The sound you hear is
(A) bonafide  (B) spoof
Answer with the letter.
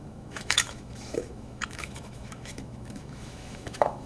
B